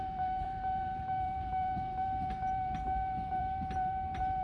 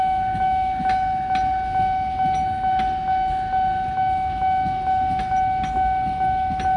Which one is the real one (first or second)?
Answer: second